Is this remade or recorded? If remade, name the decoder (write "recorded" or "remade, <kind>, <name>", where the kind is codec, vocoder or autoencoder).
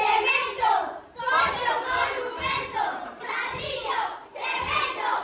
remade, vocoder, BigVGAN v2